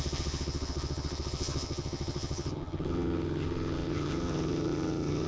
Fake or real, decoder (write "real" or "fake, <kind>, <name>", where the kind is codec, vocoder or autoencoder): fake, vocoder, HiFi-GAN